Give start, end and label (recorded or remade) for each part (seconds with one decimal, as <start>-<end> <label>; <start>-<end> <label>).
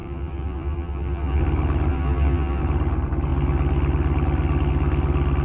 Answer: 0.0-1.4 remade; 1.4-1.9 recorded; 1.9-2.6 remade; 2.6-5.4 recorded